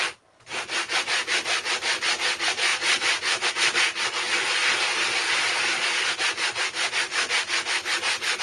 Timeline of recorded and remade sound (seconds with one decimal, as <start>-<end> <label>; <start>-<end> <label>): 0.0-2.7 recorded; 2.7-3.5 remade; 3.5-8.4 recorded